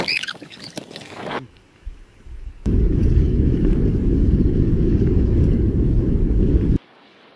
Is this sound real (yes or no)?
no